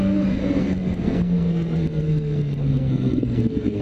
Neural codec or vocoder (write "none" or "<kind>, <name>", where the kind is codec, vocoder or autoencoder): codec, SNAC